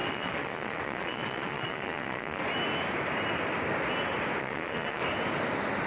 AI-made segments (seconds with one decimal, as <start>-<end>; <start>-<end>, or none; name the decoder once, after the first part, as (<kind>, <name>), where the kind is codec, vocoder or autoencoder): 0.0-2.4 (vocoder, Vocos); 4.4-5.0